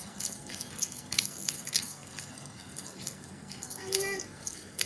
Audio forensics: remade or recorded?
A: remade